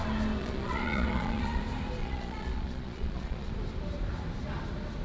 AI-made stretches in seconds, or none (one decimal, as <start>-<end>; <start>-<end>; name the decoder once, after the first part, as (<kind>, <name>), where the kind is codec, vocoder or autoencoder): 0.4-1.6 (vocoder, Vocos); 2.0-3.5